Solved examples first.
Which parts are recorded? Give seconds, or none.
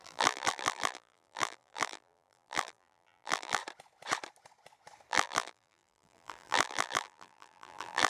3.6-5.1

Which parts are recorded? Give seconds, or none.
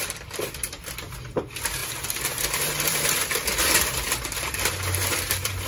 none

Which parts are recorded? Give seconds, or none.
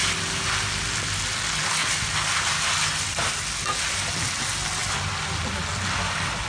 0.0-6.5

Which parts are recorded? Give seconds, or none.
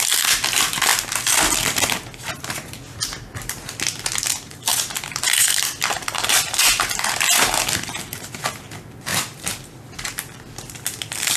0.0-4.7; 6.3-9.1